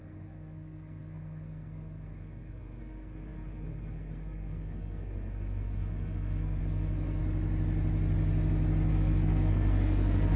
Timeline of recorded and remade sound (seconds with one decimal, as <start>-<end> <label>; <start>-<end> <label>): 0.0-7.2 remade; 7.2-8.9 recorded; 8.9-10.4 remade